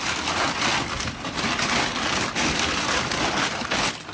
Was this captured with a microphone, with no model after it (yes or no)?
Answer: yes